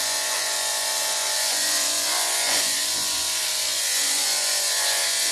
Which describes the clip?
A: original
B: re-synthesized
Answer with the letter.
B